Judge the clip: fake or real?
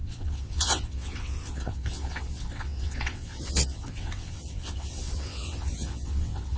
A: fake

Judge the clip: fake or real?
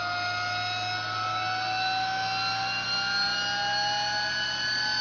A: real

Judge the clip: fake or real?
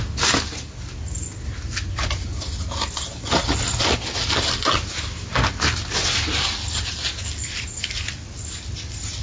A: real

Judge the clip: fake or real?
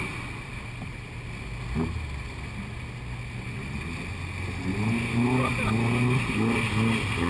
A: real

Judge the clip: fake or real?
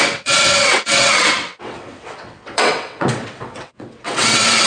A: fake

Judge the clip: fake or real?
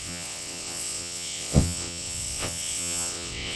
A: fake